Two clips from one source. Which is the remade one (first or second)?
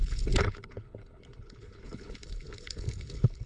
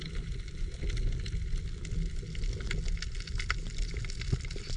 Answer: first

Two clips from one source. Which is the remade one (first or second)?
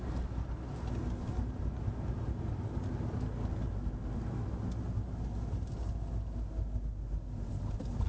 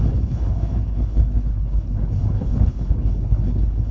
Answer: second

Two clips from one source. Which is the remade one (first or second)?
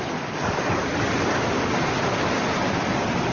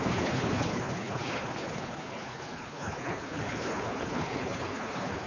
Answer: second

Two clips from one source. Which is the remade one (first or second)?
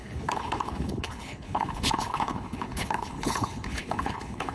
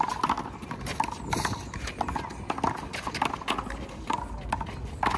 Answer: first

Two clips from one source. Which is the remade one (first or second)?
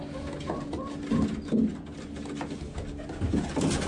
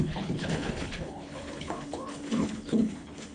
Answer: second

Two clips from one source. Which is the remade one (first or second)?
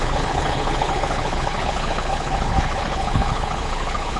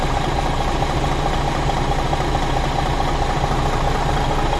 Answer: first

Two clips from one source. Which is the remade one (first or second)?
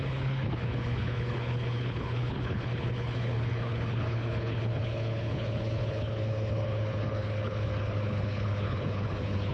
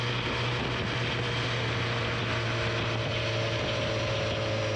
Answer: first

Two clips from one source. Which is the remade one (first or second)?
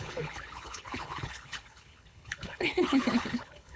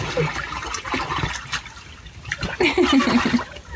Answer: first